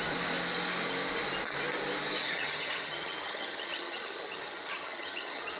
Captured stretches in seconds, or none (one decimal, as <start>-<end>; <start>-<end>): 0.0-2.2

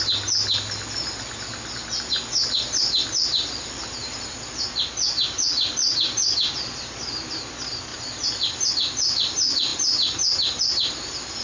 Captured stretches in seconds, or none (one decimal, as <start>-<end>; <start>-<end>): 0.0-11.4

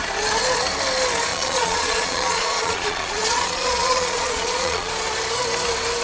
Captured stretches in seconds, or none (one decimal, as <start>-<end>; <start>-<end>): 0.0-1.3; 4.9-6.0